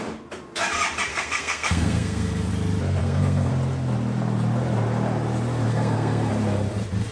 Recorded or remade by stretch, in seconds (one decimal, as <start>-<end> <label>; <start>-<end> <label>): 0.0-1.1 recorded; 1.1-2.5 remade; 2.5-3.0 recorded; 3.0-3.5 remade; 3.5-5.7 recorded; 5.7-6.3 remade; 6.3-7.1 recorded

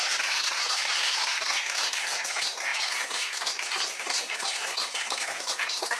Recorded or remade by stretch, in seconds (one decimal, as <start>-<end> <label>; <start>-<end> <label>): 0.0-6.0 remade

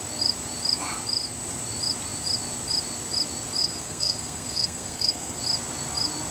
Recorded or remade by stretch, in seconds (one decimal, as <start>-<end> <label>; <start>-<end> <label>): 0.0-3.6 recorded; 3.6-5.4 remade; 5.4-6.3 recorded

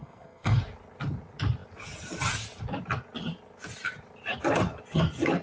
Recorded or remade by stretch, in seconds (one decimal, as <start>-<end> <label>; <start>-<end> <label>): 0.0-0.6 remade; 0.6-5.4 recorded